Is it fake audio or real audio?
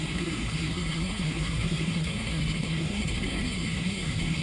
fake